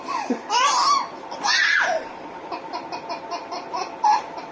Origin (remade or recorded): recorded